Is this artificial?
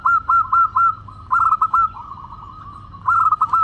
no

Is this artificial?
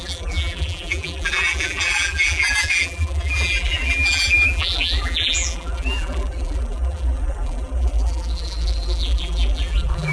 yes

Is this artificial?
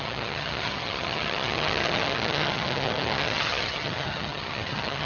yes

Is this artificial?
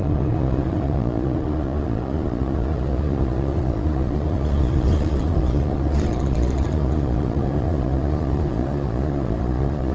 yes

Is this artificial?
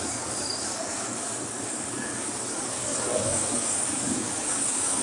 yes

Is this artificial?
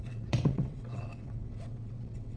yes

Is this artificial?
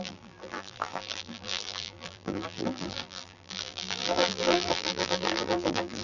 yes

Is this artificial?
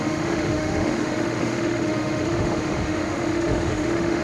yes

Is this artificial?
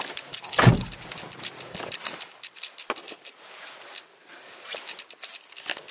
no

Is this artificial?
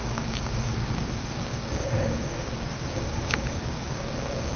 yes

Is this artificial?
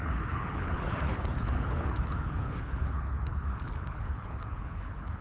yes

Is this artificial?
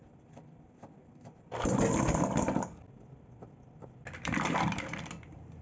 no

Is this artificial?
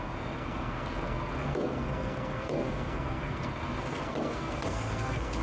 yes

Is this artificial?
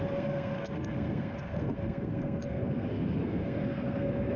yes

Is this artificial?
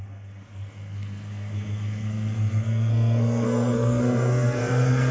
yes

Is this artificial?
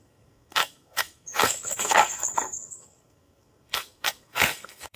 yes